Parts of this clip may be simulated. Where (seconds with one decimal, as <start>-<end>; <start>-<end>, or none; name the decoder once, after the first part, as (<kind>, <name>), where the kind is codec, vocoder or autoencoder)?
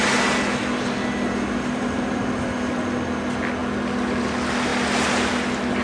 none